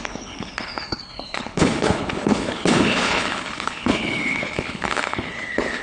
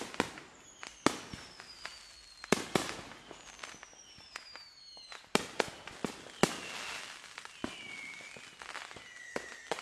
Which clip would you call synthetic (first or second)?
first